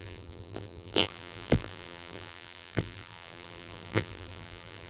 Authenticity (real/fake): fake